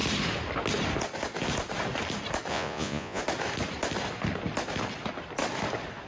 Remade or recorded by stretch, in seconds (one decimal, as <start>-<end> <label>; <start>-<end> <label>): 0.0-2.5 recorded; 2.5-3.2 remade; 3.2-6.1 recorded